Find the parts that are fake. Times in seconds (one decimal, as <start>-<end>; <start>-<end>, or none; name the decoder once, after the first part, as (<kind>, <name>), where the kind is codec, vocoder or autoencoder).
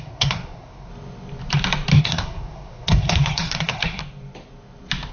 0.0-0.9 (codec, SNAC); 2.0-4.0